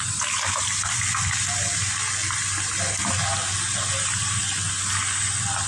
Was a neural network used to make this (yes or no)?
no